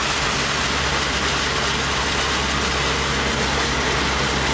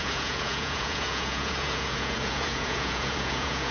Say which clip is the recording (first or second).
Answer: first